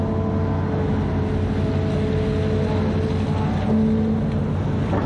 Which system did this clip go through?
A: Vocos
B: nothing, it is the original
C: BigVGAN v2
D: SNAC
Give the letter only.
B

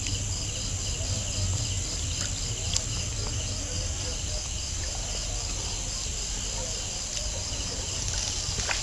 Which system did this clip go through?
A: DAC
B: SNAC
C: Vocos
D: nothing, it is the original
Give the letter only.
D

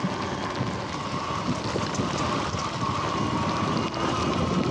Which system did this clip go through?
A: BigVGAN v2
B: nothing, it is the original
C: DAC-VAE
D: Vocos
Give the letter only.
B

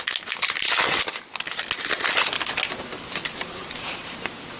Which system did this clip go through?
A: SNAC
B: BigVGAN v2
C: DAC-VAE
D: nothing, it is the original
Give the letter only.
D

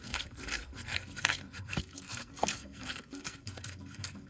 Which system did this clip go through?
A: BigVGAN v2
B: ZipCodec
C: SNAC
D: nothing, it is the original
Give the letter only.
C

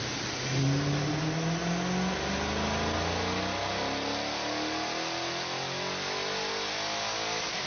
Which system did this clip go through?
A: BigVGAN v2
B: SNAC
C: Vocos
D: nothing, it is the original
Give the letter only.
D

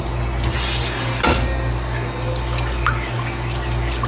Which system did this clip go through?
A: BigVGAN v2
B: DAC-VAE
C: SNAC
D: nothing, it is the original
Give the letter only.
D